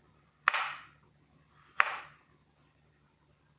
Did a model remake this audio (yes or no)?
no